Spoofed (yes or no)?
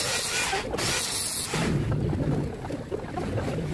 no